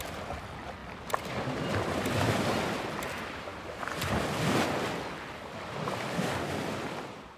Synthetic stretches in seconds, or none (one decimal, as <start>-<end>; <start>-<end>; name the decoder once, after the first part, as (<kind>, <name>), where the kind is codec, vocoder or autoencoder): none